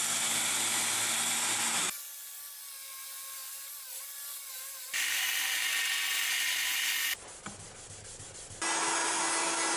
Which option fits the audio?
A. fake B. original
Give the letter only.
B